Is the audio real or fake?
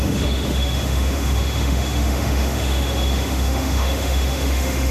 fake